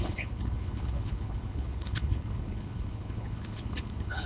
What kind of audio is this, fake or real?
fake